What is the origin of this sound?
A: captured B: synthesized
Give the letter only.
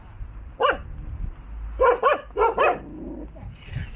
A